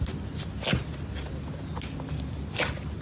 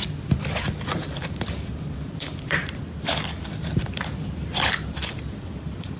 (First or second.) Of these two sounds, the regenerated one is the second